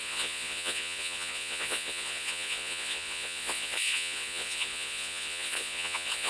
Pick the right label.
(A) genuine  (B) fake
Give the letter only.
B